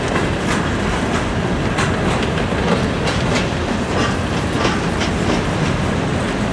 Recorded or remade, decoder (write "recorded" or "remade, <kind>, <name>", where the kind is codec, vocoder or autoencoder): recorded